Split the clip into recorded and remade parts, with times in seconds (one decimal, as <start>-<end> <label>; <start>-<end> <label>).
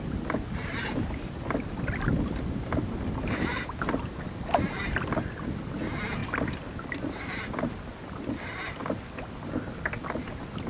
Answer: 0.0-10.7 recorded